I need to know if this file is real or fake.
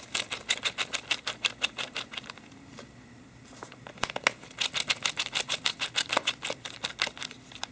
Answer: real